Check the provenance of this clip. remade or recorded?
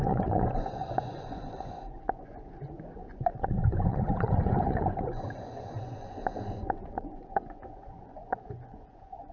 remade